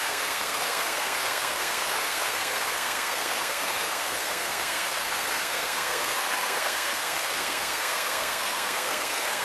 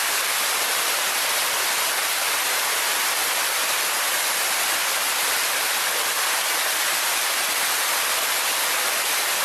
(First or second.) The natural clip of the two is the second